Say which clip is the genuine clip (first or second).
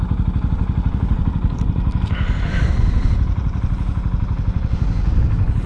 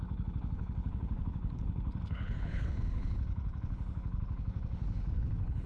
first